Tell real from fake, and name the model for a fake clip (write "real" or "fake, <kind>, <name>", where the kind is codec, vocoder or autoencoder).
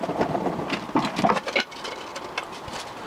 real